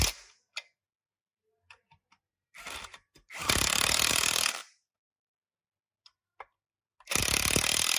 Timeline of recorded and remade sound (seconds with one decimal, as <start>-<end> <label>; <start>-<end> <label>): 0.0-8.0 recorded